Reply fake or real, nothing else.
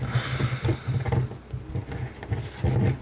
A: real